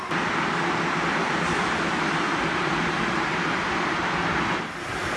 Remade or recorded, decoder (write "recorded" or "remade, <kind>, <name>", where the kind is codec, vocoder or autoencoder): remade, vocoder, BigVGAN v2